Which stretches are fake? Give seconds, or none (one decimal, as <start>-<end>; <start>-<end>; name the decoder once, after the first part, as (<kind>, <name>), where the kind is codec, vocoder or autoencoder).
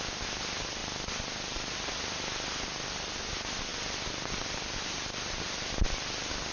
0.8-3.2 (vocoder, BigVGAN v2); 3.7-6.5